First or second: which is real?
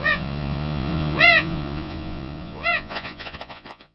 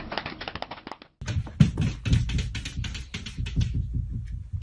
second